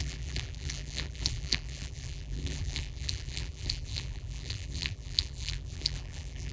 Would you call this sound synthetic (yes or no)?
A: yes